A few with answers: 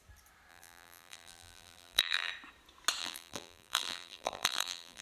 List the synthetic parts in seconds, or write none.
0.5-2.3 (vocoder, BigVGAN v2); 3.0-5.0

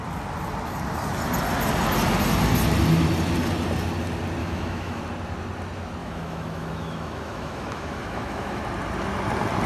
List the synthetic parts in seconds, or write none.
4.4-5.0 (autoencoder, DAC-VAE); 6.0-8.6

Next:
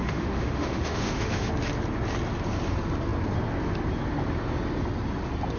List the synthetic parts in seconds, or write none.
0.0-1.5 (autoencoder, DAC-VAE)

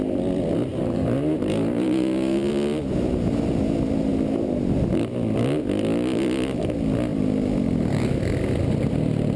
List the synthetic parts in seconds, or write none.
0.7-2.5 (vocoder, BigVGAN v2)